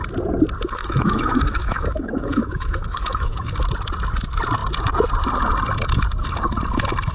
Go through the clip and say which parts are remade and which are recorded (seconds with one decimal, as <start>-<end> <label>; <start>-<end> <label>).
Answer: 0.0-0.8 recorded; 0.8-3.5 remade; 3.5-7.1 recorded